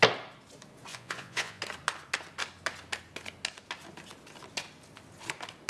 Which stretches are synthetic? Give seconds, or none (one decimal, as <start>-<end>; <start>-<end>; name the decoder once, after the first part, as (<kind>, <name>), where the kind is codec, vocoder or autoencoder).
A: 0.9-1.6 (vocoder, Vocos)